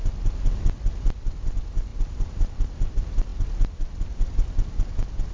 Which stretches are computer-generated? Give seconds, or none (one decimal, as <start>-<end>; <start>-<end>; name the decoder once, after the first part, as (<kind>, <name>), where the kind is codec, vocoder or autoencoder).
1.9-2.9 (vocoder, BigVGAN v2)